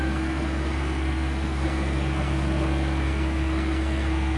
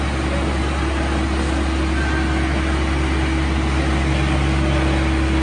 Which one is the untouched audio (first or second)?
second